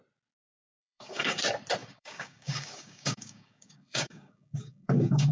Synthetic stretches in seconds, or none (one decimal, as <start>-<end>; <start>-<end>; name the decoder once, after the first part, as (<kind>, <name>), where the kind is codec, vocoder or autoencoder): 0.8-1.4 (codec, DAC); 1.8-5.3